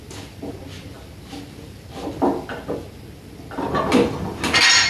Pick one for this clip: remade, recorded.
recorded